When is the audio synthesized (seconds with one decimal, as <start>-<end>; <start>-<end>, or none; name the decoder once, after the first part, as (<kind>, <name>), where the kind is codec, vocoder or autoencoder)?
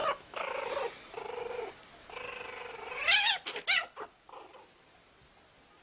0.0-0.7 (autoencoder, DAC-VAE)